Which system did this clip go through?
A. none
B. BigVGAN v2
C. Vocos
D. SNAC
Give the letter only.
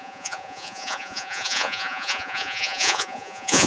C